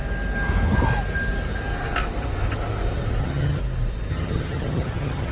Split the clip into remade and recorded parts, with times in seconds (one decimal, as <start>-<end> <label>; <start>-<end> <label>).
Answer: 0.0-3.2 recorded; 3.2-3.6 remade; 3.6-4.1 recorded; 4.1-5.3 remade